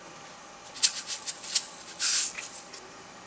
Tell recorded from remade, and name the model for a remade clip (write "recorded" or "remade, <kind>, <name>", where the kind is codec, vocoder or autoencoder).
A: recorded